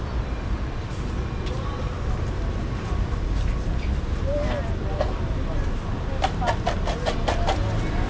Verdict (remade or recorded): recorded